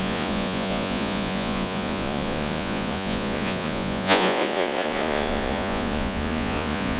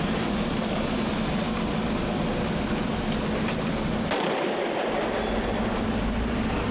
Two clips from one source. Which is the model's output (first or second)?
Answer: first